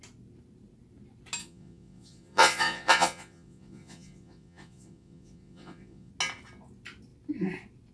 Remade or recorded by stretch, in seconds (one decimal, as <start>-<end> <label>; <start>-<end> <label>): 0.0-1.4 recorded; 1.4-6.1 remade; 6.1-7.9 recorded